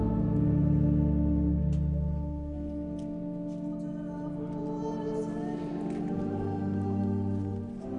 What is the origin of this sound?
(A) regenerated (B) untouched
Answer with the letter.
B